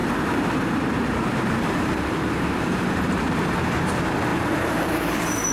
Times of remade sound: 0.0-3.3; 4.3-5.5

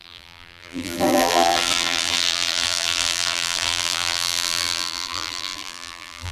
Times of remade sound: 0.0-6.3